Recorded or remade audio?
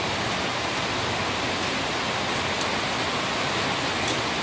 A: recorded